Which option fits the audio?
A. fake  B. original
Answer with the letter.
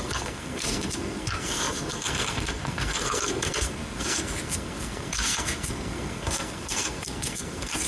A